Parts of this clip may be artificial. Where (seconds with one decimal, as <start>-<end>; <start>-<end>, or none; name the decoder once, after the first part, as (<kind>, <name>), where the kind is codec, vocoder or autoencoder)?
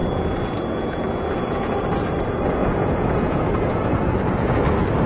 0.0-1.8 (vocoder, Vocos); 2.6-4.6